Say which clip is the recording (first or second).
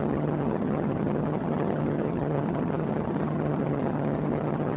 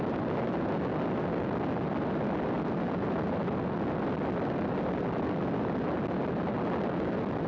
second